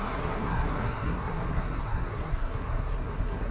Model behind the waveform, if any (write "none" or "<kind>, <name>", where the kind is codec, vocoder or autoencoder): codec, SNAC